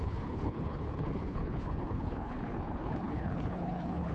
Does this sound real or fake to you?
fake